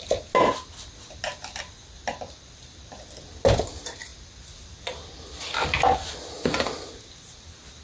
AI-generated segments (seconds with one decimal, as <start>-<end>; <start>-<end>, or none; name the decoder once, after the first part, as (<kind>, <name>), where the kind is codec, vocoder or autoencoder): 1.3-3.5 (vocoder, BigVGAN v2); 4.1-5.9